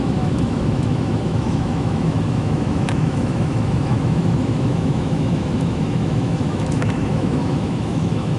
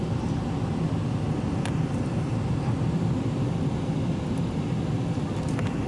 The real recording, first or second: second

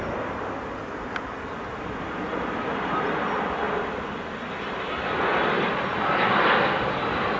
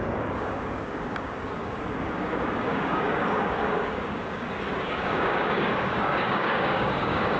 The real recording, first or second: first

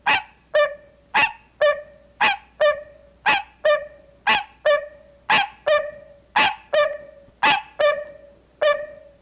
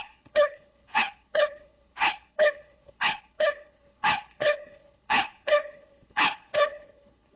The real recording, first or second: first